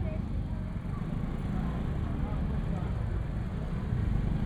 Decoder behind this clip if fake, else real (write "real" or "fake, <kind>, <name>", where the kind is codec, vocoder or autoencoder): real